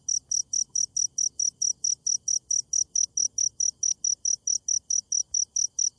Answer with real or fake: real